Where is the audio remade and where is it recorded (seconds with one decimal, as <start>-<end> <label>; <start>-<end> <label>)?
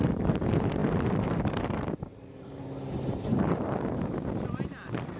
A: 0.0-5.2 remade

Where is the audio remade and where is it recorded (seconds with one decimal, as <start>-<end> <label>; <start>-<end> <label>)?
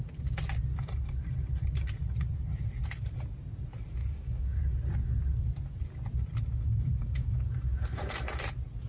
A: 0.0-4.0 recorded; 4.0-4.6 remade; 4.6-7.0 recorded; 7.0-8.2 remade; 8.2-8.9 recorded